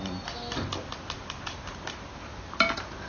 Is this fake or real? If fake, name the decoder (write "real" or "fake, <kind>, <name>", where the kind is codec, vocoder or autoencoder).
real